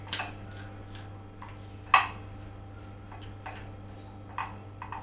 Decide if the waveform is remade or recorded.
recorded